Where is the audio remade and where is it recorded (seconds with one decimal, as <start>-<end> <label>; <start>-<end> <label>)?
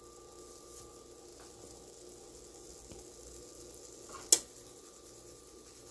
0.0-5.9 recorded